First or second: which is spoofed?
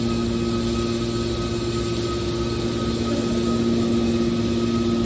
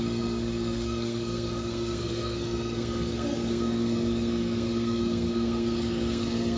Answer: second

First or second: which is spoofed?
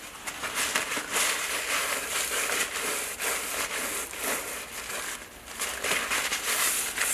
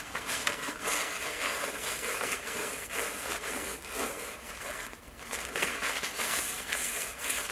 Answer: second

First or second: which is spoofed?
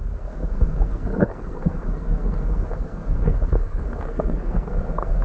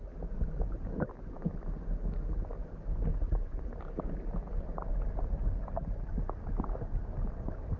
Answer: first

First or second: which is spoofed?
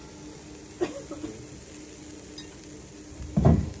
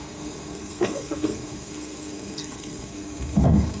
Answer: second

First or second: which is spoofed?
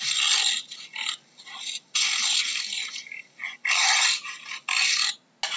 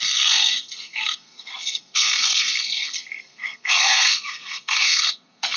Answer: second